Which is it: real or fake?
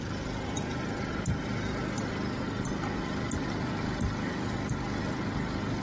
real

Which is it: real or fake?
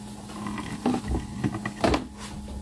real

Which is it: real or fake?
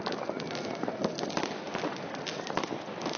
real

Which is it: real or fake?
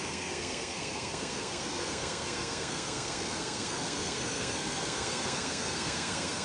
fake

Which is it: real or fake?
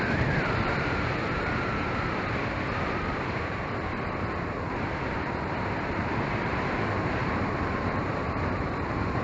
fake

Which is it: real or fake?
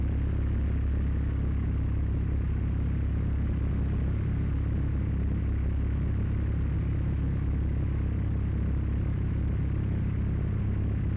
real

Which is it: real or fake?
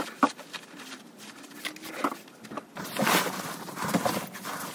real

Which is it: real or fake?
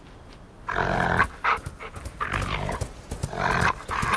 real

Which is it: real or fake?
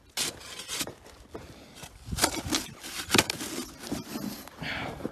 real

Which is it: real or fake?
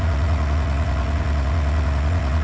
fake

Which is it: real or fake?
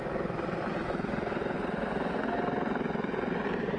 real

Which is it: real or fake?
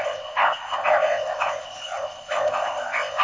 fake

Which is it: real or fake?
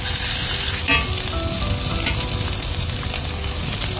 real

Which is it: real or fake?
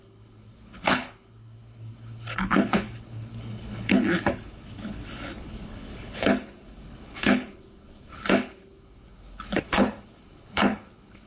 fake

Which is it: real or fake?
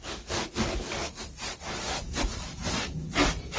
real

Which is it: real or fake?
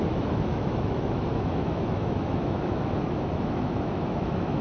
fake